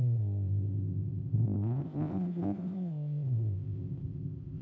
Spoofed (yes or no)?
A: yes